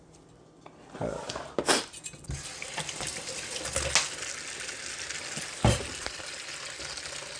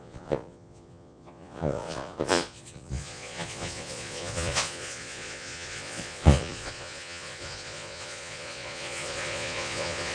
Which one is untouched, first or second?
first